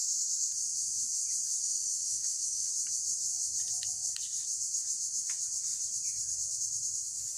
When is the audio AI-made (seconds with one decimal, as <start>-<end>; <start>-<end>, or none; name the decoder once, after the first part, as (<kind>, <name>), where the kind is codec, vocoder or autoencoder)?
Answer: 1.6-2.7 (autoencoder, DAC-VAE)